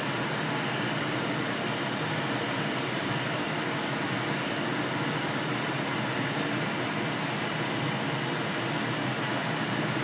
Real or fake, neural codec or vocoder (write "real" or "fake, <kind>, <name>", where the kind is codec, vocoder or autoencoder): real